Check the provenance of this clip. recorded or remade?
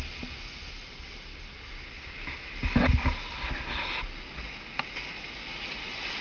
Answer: recorded